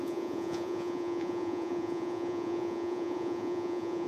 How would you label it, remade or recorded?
remade